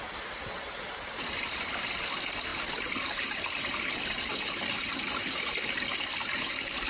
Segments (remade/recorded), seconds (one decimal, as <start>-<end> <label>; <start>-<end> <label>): 0.0-6.9 recorded

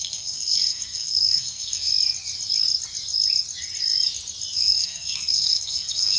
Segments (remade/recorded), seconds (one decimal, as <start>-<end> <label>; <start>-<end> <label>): 0.0-1.9 remade; 1.9-4.5 recorded; 4.5-6.2 remade

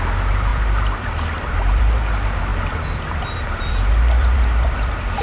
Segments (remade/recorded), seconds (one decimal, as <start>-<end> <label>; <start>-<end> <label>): 0.0-0.5 recorded; 0.5-1.8 remade; 1.8-2.5 recorded; 2.5-5.2 remade

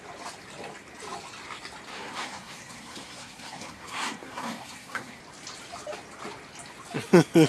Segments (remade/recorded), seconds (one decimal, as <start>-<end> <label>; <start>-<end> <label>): 0.0-1.9 recorded; 1.9-5.2 remade; 5.2-7.5 recorded

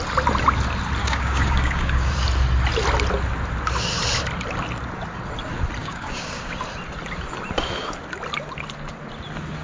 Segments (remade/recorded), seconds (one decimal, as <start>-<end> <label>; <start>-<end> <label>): 0.0-1.0 recorded; 1.0-2.1 remade; 2.1-5.8 recorded; 5.8-6.5 remade; 6.5-9.6 recorded

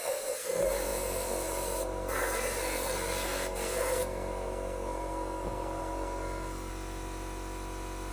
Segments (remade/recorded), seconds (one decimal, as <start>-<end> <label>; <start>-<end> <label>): 0.0-6.7 remade; 6.7-8.1 recorded

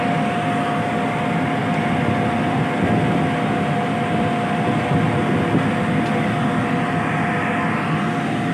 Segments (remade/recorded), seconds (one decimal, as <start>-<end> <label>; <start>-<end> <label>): 0.0-8.5 recorded